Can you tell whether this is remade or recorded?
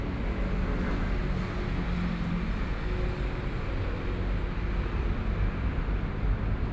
recorded